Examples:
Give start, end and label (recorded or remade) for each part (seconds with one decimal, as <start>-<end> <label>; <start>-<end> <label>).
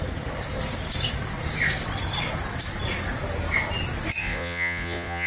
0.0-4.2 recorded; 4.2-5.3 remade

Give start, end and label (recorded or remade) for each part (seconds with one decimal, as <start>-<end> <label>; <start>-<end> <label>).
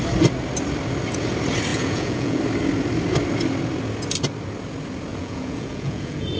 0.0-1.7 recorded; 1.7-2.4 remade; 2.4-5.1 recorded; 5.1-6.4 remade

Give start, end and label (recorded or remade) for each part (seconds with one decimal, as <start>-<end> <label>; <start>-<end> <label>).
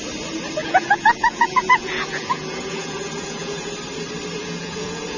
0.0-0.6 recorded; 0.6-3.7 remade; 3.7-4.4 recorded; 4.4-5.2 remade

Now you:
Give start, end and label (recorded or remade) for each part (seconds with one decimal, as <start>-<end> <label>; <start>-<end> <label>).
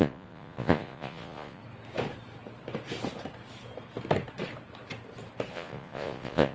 0.0-1.6 remade; 1.6-5.5 recorded; 5.5-6.5 remade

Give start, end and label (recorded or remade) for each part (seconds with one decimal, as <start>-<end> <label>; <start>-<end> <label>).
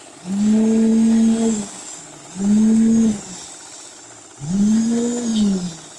0.0-6.0 recorded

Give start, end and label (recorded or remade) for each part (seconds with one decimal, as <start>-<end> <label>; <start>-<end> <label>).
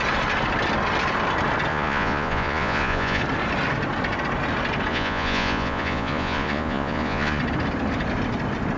0.0-1.7 recorded; 1.7-3.2 remade; 3.2-4.9 recorded; 4.9-7.4 remade; 7.4-8.8 recorded